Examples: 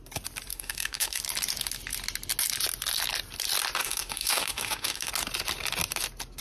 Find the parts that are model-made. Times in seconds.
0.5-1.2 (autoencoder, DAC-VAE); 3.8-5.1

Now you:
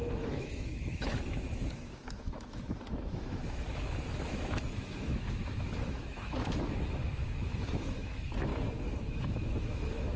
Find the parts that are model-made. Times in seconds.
0.0-8.5 (autoencoder, DAC-VAE); 9.2-10.2

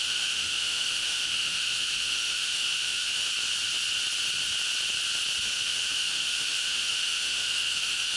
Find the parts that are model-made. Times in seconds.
0.0-3.3 (autoencoder, DAC-VAE); 5.5-8.2

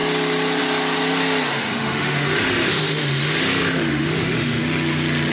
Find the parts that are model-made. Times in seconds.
1.5-4.6 (autoencoder, DAC-VAE)

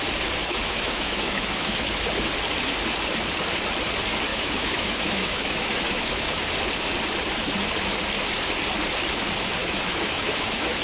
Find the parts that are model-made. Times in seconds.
0.4-2.0 (autoencoder, DAC-VAE); 4.3-6.4; 9.6-10.8

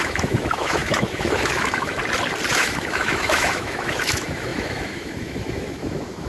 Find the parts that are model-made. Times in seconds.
0.0-2.0 (autoencoder, DAC-VAE); 2.5-6.3

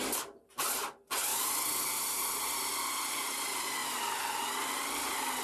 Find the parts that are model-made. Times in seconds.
none